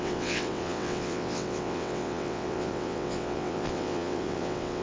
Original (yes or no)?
no